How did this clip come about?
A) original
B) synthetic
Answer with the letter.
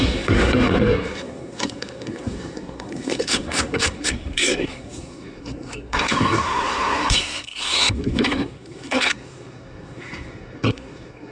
B